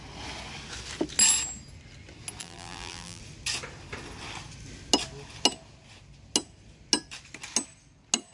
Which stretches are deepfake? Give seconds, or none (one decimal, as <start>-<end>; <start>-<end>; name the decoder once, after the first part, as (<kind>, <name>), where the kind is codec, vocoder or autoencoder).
2.4-3.2 (vocoder, BigVGAN v2)